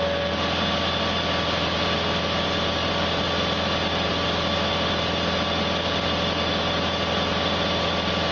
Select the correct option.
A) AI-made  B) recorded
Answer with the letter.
B